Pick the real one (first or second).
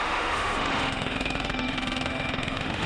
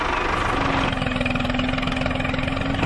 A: second